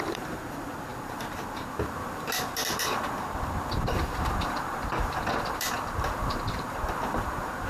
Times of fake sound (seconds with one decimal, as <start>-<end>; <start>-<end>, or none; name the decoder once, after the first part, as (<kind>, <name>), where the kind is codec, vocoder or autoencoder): 0.0-7.7 (vocoder, BigVGAN v2)